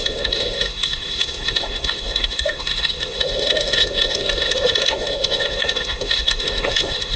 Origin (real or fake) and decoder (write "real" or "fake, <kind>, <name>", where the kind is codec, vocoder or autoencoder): fake, autoencoder, DAC-VAE